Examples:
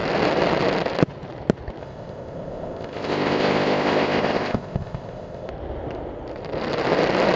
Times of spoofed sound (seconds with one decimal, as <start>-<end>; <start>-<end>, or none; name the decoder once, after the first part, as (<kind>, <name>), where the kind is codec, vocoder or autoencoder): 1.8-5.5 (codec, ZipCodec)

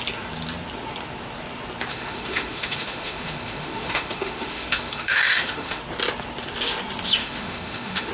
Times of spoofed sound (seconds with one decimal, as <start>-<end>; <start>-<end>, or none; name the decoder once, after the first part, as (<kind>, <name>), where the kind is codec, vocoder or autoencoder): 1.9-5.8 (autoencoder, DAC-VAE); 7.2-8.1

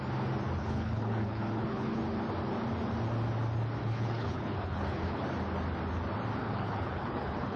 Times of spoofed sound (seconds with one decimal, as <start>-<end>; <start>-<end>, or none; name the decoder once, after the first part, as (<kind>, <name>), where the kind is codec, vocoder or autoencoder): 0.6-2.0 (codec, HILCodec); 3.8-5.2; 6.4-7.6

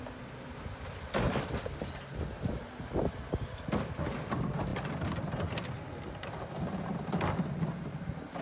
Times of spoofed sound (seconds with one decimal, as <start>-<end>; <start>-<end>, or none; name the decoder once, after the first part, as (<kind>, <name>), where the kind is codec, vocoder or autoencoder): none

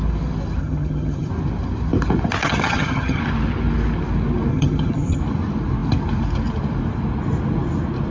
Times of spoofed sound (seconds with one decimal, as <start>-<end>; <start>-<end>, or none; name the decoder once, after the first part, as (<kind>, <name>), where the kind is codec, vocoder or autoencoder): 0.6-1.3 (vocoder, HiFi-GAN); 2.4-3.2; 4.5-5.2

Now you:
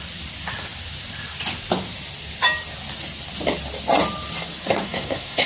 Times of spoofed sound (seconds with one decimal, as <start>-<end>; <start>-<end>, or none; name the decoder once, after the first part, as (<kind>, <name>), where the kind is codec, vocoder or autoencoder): 4.8-5.5 (codec, SNAC)